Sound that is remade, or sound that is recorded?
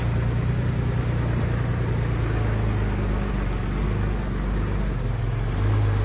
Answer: recorded